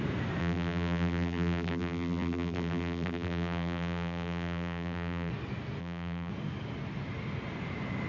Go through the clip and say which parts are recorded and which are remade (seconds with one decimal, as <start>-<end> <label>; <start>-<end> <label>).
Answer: 0.0-0.4 recorded; 0.4-5.3 remade; 5.3-5.8 recorded; 5.8-6.3 remade; 6.3-8.1 recorded